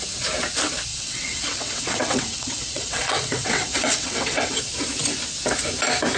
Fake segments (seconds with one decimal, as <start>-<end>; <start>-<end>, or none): 0.9-4.6